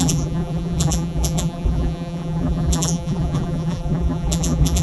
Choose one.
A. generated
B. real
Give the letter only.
A